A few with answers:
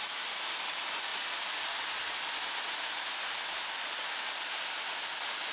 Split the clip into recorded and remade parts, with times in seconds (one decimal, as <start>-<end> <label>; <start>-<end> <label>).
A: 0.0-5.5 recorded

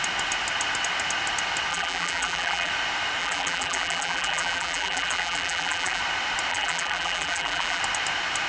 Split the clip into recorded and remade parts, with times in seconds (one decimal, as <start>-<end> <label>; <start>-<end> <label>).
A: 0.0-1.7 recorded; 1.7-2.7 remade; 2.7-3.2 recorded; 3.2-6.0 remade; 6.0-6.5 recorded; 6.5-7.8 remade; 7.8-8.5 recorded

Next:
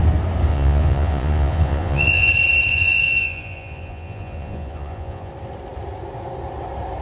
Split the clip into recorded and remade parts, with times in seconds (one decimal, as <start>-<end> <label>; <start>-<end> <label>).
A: 0.0-0.5 recorded; 0.5-2.3 remade; 2.3-2.7 recorded; 2.7-5.3 remade; 5.3-7.0 recorded

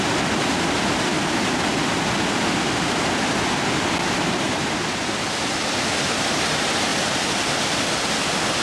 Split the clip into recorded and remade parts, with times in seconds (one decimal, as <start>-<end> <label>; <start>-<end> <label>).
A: 0.0-1.1 recorded; 1.1-6.1 remade; 6.1-6.9 recorded; 6.9-8.6 remade

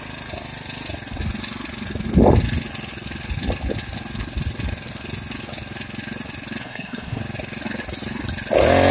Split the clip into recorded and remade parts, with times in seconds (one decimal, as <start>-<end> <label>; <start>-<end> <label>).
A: 0.0-6.6 recorded; 6.6-7.2 remade; 7.2-8.9 recorded

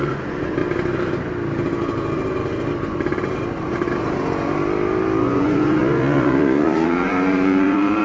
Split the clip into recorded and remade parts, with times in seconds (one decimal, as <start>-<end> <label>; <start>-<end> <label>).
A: 0.0-0.6 remade; 0.6-5.2 recorded; 5.2-8.0 remade